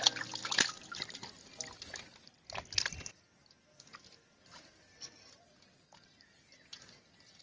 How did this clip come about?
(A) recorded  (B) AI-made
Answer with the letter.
A